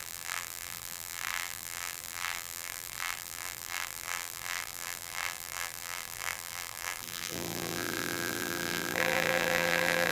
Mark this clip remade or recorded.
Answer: remade